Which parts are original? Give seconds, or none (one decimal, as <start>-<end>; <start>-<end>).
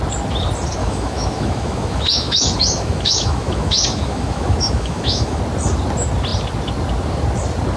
0.0-0.8; 5.4-7.8